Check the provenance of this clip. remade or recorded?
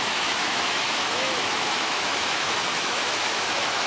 remade